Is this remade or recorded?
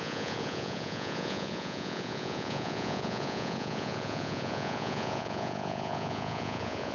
remade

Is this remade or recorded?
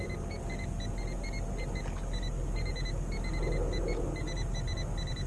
recorded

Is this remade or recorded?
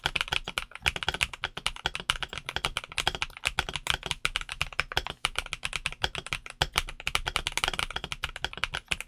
recorded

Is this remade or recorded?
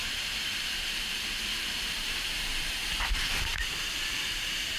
remade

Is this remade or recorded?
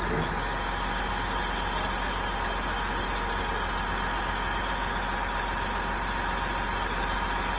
recorded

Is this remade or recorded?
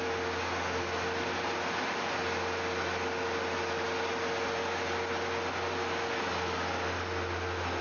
recorded